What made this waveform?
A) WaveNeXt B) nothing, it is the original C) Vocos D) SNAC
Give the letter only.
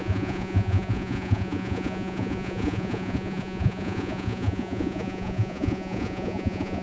C